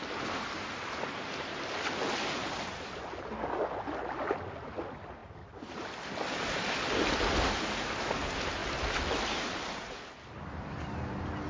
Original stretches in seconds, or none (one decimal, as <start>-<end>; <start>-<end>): 0.0-11.5